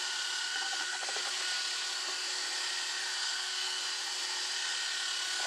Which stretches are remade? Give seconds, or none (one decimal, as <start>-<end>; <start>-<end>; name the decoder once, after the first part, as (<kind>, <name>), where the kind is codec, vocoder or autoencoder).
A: 0.5-1.2 (codec, SNAC); 3.0-3.8